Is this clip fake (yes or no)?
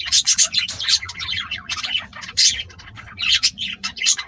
yes